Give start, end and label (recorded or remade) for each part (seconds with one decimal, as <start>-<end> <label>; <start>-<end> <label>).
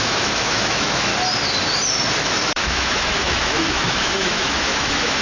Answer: 0.0-1.1 remade; 1.1-2.2 recorded; 2.2-5.2 remade